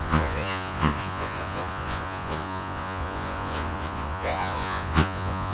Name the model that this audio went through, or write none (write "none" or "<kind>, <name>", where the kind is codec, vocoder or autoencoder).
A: vocoder, Vocos